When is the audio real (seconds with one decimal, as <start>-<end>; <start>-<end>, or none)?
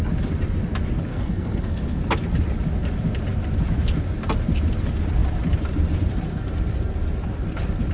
0.0-1.1; 2.0-7.9